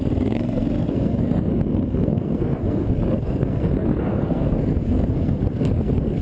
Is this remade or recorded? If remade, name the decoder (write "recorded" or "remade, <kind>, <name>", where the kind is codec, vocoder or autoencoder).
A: remade, codec, SNAC